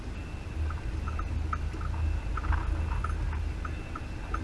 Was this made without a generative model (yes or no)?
yes